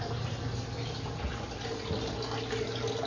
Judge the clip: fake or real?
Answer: real